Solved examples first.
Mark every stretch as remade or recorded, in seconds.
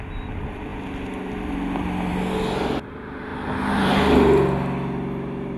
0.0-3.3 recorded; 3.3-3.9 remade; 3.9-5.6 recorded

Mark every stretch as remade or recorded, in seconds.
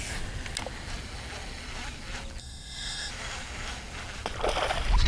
0.0-2.4 recorded; 2.4-3.1 remade; 3.1-5.1 recorded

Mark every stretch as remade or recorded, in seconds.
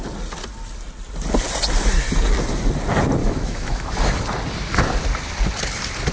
0.0-3.2 recorded; 3.2-3.9 remade; 3.9-6.1 recorded